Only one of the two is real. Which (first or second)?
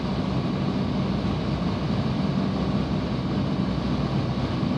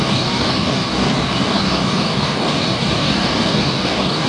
first